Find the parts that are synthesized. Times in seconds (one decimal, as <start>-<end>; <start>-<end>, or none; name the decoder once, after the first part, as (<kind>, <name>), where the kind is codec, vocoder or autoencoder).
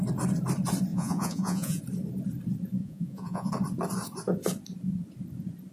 0.9-1.8 (vocoder, Vocos); 2.8-3.5